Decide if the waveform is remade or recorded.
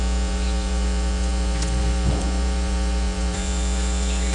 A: remade